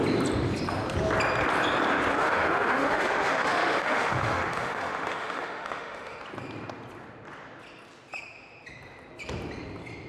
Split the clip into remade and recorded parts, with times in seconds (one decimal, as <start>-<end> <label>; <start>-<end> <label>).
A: 0.0-2.1 recorded; 2.1-6.2 remade; 6.2-10.1 recorded